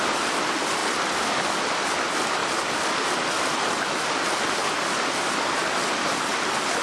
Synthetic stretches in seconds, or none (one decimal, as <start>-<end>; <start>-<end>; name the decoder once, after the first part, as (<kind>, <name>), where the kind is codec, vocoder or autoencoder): none